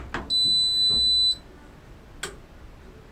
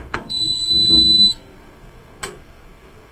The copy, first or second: second